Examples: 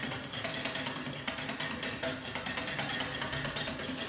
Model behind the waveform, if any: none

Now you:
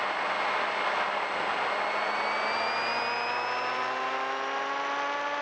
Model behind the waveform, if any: none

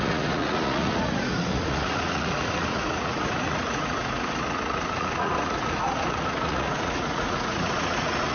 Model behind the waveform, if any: vocoder, Vocos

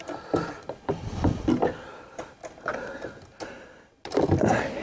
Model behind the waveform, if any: none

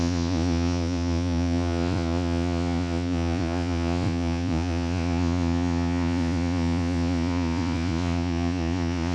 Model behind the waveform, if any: vocoder, Vocos